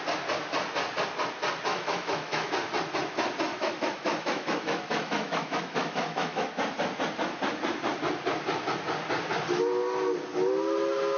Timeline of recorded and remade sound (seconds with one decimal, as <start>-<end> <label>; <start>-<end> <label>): 0.0-1.7 recorded; 1.7-2.5 remade; 2.5-3.5 recorded; 3.5-6.5 remade; 6.5-11.2 recorded